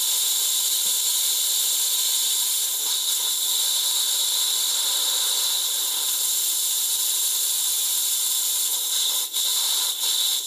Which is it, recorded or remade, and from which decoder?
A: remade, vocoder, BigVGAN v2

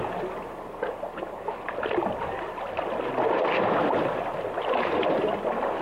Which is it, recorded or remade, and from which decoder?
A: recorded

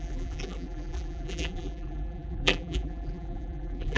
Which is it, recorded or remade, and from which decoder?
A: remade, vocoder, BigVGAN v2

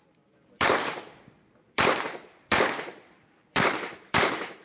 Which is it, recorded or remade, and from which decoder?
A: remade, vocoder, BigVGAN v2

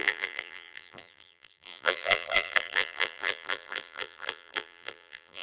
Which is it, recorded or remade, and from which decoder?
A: remade, vocoder, BigVGAN v2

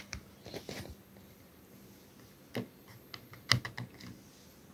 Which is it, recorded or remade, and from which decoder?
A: recorded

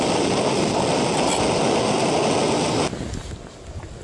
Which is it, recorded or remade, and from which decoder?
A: recorded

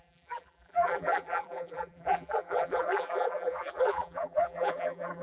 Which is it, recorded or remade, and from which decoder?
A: remade, vocoder, BigVGAN v2